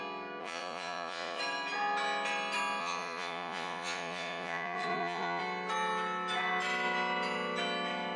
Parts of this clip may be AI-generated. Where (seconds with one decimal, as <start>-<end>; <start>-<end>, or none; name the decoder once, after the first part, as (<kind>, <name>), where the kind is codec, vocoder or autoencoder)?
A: 0.4-1.4 (vocoder, Vocos); 2.8-5.4